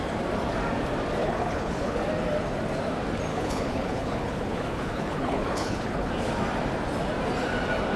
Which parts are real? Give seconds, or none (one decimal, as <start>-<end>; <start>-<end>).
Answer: 0.0-1.2; 2.0-3.3; 6.1-8.0